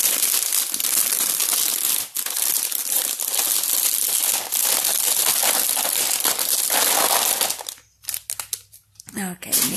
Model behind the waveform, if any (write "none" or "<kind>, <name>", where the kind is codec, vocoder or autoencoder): none